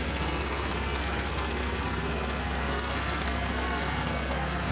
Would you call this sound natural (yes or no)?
no